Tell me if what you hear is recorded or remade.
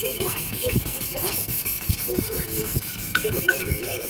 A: remade